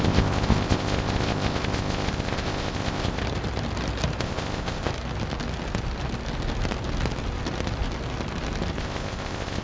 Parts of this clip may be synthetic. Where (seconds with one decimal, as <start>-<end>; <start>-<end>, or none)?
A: 0.0-3.2; 4.2-4.9; 8.8-9.6